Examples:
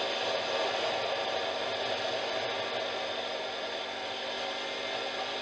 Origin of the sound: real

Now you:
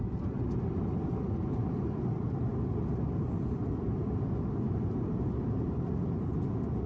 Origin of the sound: real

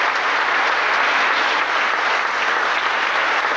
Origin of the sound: real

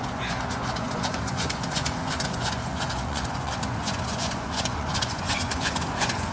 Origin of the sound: fake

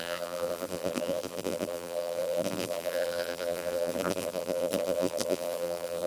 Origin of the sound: fake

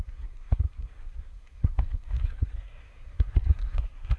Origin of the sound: fake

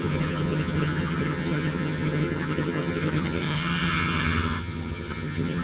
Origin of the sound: fake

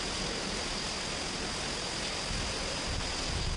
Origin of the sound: real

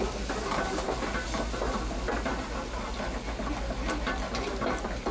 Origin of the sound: real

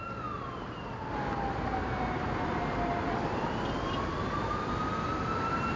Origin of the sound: real